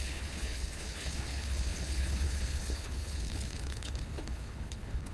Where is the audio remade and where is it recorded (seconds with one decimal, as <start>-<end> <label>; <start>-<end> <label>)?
0.0-5.1 remade